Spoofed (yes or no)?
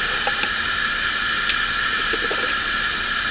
no